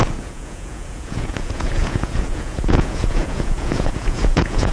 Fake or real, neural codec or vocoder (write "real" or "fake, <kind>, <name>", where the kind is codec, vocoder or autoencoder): fake, vocoder, Vocos